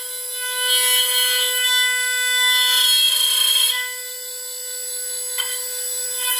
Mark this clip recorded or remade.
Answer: recorded